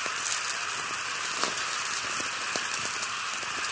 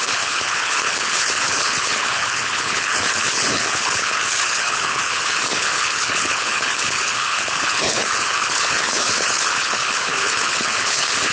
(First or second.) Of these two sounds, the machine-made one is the second